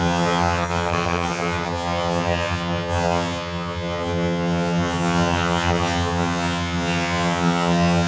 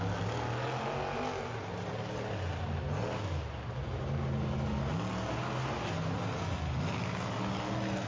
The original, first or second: second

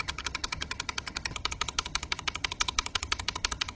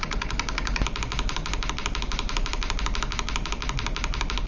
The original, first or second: second